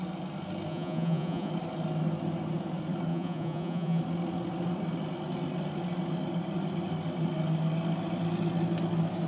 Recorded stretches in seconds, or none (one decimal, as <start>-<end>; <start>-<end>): 0.0-0.7; 1.5-3.1; 4.0-9.3